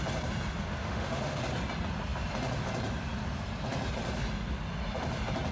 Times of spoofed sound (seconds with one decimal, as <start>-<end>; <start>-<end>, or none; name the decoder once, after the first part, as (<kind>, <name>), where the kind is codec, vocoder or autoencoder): 0.8-1.4 (autoencoder, DAC-VAE)